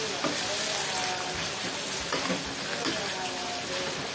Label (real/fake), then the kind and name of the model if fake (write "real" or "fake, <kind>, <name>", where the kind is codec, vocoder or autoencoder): real